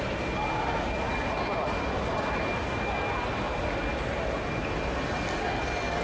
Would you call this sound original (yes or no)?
yes